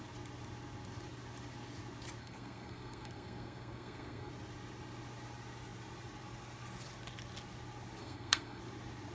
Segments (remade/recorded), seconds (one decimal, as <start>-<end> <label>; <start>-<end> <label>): 0.0-2.2 recorded; 2.2-4.3 remade; 4.3-8.0 recorded; 8.0-8.6 remade; 8.6-9.1 recorded